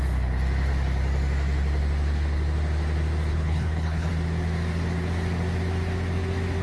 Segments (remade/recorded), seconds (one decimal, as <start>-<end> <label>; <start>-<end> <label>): 0.0-3.3 recorded; 3.3-4.1 remade; 4.1-6.6 recorded